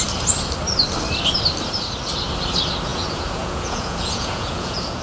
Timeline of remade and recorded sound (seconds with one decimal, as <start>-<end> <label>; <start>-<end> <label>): 0.0-2.9 recorded; 2.9-5.0 remade